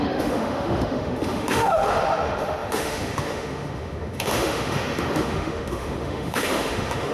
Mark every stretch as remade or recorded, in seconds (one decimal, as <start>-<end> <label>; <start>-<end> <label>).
0.0-7.1 remade